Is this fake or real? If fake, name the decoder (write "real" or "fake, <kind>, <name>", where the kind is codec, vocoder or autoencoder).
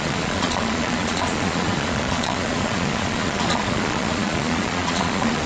fake, vocoder, Vocos